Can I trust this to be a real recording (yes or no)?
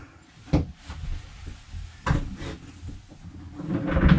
yes